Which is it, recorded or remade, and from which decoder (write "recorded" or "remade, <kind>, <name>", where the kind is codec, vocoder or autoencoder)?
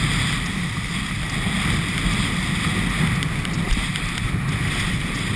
recorded